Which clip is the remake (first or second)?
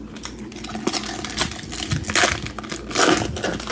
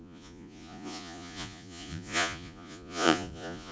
second